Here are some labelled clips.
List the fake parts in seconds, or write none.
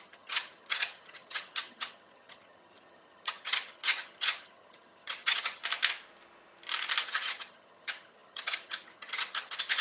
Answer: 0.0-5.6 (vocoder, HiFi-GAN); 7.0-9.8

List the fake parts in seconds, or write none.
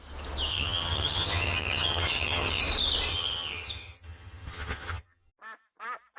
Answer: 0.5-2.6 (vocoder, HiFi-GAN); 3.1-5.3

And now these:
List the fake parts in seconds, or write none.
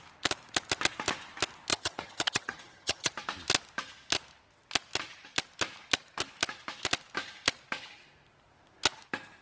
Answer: 1.7-3.1 (vocoder, HiFi-GAN)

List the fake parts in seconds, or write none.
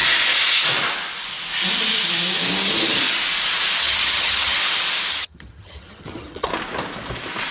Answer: 3.8-4.6 (vocoder, HiFi-GAN); 5.1-6.5